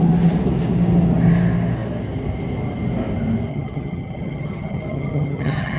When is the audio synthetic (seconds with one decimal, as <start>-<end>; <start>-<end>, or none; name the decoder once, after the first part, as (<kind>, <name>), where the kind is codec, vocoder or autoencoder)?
3.5-5.8 (vocoder, HiFi-GAN)

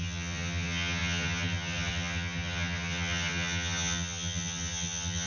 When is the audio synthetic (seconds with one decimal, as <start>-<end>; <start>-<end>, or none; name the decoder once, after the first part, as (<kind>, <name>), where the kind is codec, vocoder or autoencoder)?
0.0-5.3 (vocoder, HiFi-GAN)

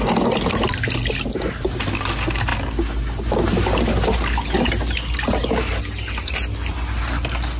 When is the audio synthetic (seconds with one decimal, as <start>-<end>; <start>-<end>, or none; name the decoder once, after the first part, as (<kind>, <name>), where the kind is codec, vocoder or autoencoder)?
none

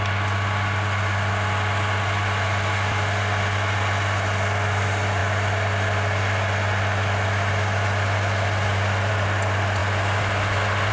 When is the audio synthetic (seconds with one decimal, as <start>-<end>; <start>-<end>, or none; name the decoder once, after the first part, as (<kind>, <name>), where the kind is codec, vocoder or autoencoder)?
none

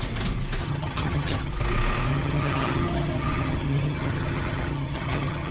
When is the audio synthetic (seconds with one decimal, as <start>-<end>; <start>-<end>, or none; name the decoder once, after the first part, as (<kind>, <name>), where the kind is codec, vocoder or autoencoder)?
0.6-1.5 (vocoder, HiFi-GAN); 2.1-5.5

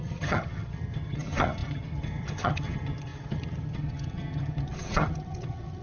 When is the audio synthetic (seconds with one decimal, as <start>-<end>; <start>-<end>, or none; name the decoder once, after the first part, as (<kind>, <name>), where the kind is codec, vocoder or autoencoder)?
0.0-5.8 (vocoder, HiFi-GAN)

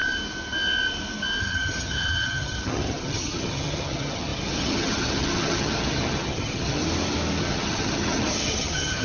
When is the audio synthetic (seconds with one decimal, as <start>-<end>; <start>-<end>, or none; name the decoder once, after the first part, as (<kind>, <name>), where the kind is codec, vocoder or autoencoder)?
1.4-6.8 (vocoder, HiFi-GAN); 7.4-9.0